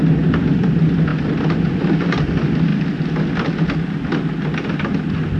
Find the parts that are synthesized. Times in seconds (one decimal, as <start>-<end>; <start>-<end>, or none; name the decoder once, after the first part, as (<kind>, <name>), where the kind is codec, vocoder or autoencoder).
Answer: none